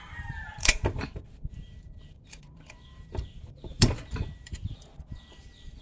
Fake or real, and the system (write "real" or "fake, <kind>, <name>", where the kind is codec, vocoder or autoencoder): fake, vocoder, BigVGAN v2